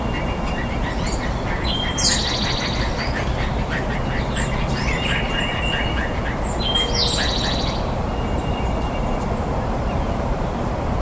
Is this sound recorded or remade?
recorded